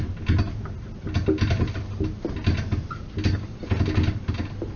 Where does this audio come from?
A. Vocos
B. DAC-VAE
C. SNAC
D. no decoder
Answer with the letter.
D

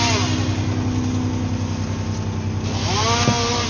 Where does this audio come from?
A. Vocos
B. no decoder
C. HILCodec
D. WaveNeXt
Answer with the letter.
B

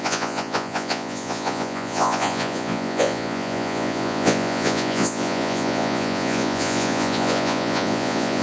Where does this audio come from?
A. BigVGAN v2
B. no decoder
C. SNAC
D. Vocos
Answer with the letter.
D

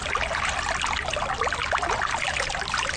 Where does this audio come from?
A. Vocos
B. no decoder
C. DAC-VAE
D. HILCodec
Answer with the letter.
B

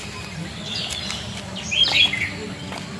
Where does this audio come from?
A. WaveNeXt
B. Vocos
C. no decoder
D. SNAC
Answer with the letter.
C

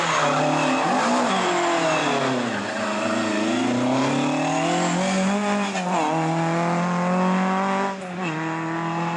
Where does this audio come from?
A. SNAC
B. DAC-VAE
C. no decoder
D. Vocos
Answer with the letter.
C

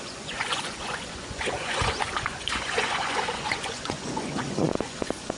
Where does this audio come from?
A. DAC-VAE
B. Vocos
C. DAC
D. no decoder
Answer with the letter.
B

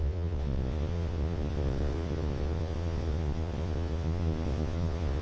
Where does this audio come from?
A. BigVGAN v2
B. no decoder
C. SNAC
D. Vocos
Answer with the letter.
D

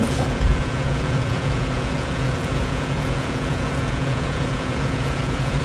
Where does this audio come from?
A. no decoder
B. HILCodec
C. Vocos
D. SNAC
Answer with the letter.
C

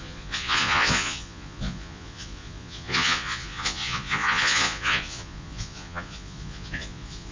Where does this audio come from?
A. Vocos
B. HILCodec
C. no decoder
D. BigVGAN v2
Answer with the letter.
A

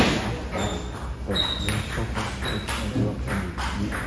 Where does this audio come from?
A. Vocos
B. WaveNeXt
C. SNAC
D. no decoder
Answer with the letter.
D